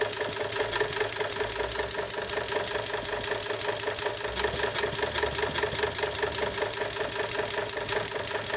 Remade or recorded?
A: recorded